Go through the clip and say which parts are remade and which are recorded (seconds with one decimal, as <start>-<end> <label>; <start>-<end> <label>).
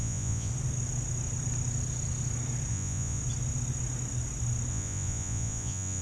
0.0-0.5 remade; 0.5-2.7 recorded; 2.7-3.2 remade; 3.2-4.7 recorded; 4.7-6.0 remade